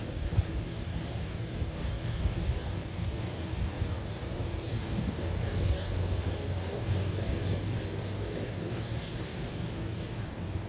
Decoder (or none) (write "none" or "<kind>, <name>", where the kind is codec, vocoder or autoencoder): codec, DAC